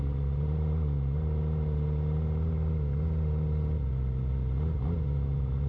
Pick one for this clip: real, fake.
real